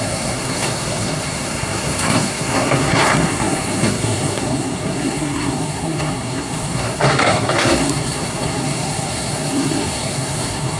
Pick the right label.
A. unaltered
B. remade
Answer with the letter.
B